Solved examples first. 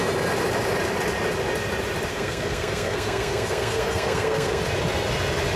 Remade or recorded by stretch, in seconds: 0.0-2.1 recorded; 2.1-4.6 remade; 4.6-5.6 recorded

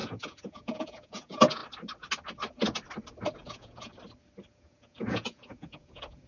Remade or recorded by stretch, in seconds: 0.0-1.6 remade; 1.6-3.3 recorded; 3.3-3.9 remade; 3.9-4.5 recorded; 4.5-6.3 remade

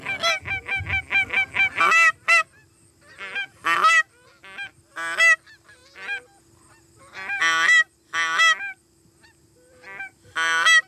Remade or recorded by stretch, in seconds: 0.0-10.9 recorded

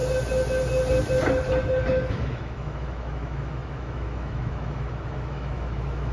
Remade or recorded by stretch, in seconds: 0.0-2.1 recorded; 2.1-6.1 remade

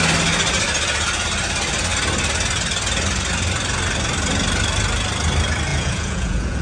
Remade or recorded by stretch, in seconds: 0.0-5.7 recorded; 5.7-6.6 remade